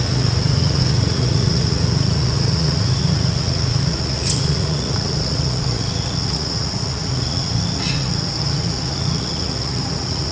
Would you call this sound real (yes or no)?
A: no